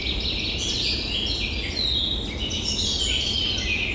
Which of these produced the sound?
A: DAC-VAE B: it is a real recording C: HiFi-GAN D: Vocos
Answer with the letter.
B